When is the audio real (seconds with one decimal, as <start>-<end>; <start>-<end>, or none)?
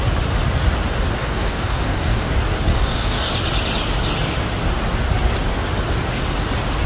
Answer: 0.0-1.2; 2.3-2.7; 3.3-6.9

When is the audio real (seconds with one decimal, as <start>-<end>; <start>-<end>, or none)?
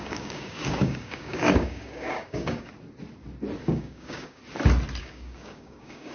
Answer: 2.7-3.6; 4.4-5.0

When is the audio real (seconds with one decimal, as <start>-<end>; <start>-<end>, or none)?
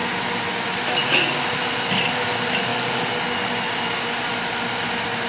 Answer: 0.0-2.7; 3.5-5.3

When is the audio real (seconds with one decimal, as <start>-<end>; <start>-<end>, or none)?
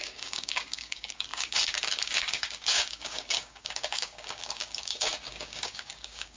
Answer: none